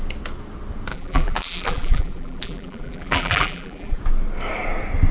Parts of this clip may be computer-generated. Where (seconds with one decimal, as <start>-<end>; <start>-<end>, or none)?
0.9-4.0